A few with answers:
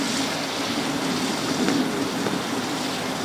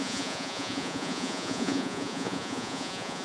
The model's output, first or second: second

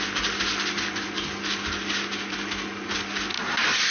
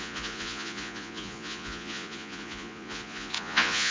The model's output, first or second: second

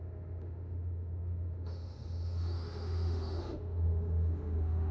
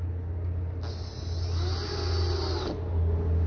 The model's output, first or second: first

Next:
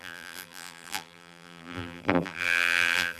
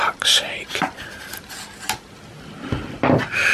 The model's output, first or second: first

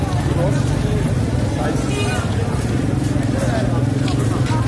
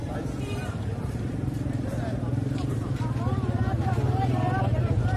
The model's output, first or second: second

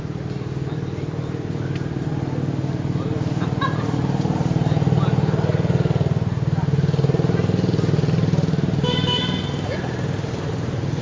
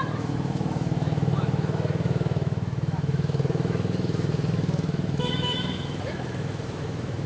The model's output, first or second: second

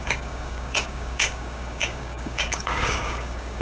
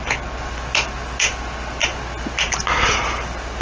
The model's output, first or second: first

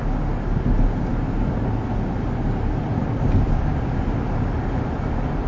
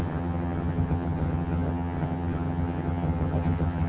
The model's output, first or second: second